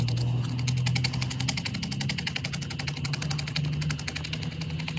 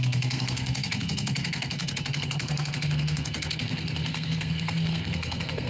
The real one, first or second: first